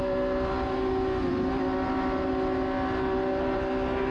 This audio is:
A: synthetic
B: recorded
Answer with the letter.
B